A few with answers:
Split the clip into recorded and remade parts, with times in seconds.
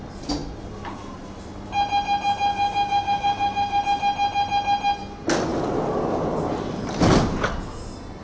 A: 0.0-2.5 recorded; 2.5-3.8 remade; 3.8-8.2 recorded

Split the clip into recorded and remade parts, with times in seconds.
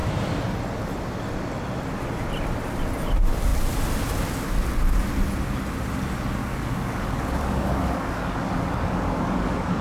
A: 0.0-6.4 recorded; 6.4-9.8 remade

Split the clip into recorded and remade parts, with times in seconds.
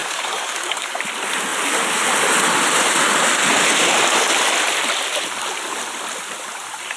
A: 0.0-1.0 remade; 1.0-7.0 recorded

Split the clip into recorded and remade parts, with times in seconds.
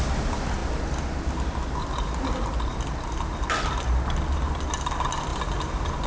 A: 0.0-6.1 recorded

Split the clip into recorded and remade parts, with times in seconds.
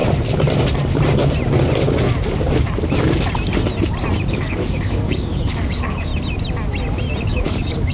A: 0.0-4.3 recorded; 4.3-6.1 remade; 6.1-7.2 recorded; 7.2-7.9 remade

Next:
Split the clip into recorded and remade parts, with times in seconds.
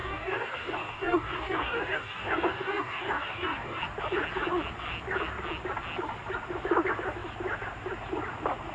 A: 0.0-3.8 remade; 3.8-8.7 recorded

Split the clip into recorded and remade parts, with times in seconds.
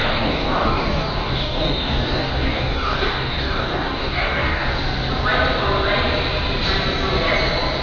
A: 0.0-4.7 remade; 4.7-7.8 recorded